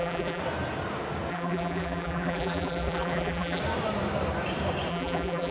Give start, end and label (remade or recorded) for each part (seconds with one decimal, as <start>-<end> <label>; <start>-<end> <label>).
0.0-0.4 remade; 0.4-1.3 recorded; 1.3-3.6 remade; 3.6-4.9 recorded; 4.9-5.5 remade